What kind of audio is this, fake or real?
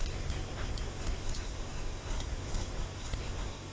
fake